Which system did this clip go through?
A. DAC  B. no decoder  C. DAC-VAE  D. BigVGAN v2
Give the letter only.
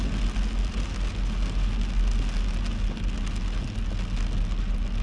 B